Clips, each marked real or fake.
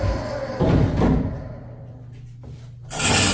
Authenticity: real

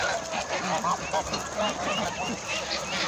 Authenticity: real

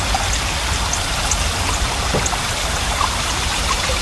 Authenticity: real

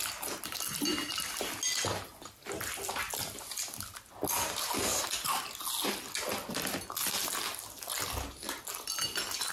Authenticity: real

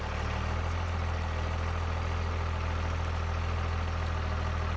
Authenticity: real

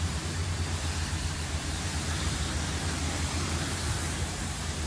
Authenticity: fake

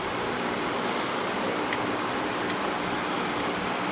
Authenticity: real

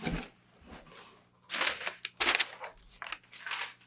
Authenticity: real